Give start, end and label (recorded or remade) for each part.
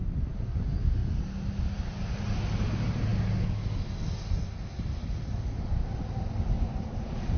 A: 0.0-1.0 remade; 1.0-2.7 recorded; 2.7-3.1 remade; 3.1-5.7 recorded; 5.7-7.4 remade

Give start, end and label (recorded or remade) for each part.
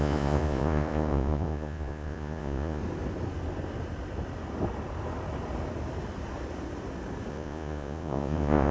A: 0.0-2.8 remade; 2.8-7.3 recorded; 7.3-8.7 remade